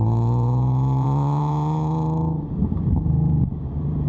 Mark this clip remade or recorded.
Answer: remade